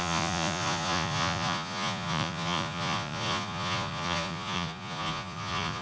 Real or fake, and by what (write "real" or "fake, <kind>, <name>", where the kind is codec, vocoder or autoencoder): fake, vocoder, Vocos